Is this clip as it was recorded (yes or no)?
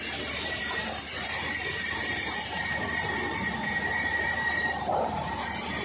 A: no